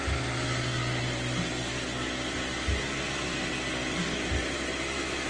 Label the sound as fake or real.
real